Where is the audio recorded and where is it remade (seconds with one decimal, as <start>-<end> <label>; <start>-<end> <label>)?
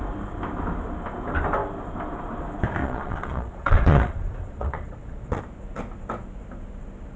0.0-2.8 recorded; 2.8-5.4 remade; 5.4-7.2 recorded